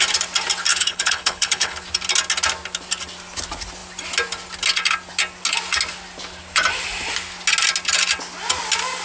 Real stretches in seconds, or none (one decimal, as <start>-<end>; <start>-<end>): 0.0-0.7; 1.8-9.0

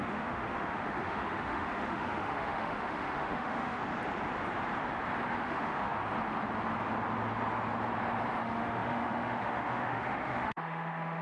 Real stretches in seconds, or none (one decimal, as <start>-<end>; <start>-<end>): 3.8-5.4; 6.0-8.4

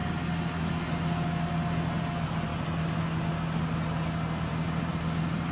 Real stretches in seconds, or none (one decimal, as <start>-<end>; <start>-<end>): 0.0-5.5

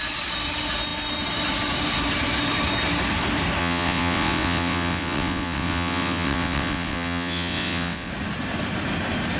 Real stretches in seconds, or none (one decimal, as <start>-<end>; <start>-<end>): 0.0-3.6; 8.1-9.4